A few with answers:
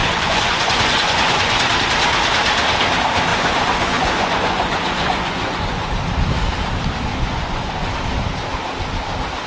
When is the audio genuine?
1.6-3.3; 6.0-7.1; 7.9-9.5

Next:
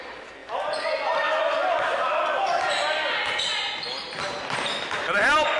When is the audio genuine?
0.0-5.6

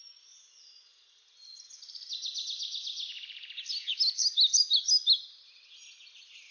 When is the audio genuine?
0.0-6.5